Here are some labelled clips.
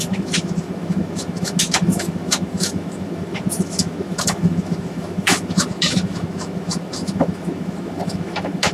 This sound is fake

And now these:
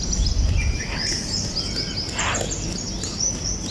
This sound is real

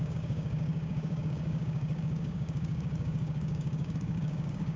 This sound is fake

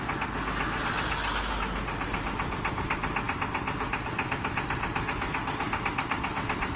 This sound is real